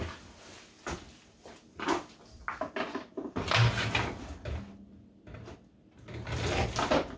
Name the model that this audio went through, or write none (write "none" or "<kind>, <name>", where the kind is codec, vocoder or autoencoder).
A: none